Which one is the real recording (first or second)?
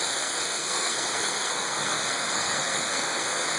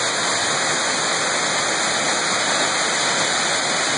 second